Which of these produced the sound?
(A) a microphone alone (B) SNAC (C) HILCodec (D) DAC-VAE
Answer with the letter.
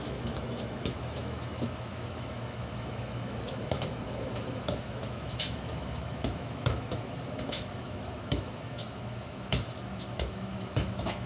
D